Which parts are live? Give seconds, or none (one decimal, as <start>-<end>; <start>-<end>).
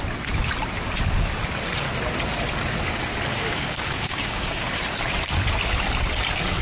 0.0-3.3; 4.7-6.6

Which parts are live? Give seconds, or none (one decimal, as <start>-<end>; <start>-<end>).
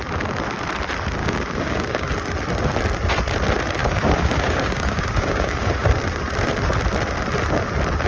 0.0-1.2; 2.1-3.8; 5.9-8.1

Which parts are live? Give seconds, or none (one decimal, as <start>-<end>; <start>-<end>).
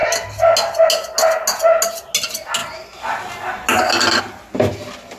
0.0-5.2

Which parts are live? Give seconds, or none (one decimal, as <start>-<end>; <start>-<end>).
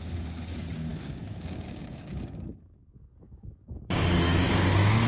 none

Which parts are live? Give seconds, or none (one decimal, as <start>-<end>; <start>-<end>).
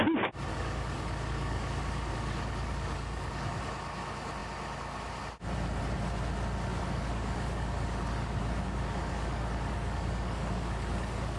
0.0-0.5; 3.6-6.7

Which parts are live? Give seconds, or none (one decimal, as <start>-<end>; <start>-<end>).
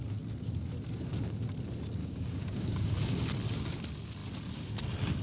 0.0-2.0; 3.2-5.2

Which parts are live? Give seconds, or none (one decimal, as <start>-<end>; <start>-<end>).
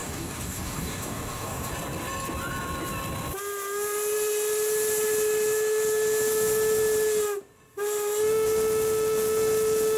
1.7-10.0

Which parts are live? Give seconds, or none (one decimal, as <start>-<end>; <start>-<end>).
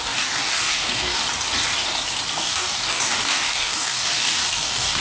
1.2-2.3